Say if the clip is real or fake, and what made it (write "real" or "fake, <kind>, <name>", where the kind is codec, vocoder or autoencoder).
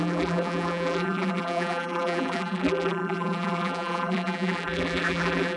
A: fake, vocoder, BigVGAN v2